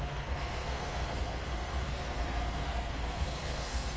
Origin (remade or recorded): remade